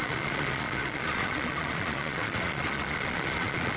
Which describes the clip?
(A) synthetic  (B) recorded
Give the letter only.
A